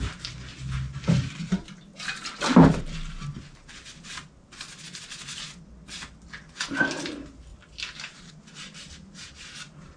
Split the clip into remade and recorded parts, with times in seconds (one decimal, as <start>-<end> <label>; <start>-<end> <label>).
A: 0.0-10.0 recorded